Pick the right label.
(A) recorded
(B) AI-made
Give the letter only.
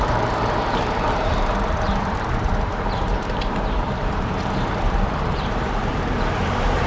B